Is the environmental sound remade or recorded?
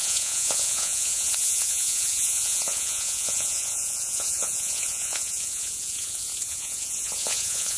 remade